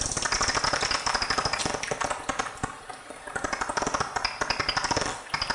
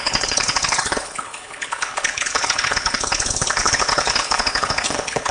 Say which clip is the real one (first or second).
first